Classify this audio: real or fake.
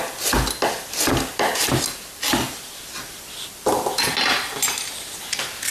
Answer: real